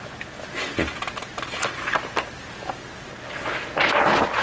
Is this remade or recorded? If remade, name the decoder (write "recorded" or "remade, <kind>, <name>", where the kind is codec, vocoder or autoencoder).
recorded